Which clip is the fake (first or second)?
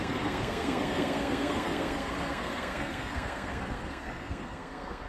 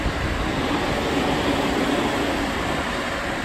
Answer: first